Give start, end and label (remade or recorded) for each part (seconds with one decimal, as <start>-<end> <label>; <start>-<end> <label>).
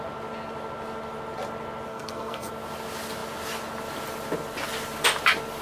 0.0-1.9 recorded; 1.9-2.5 remade; 2.5-5.6 recorded